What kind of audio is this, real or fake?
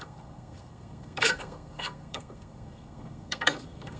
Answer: fake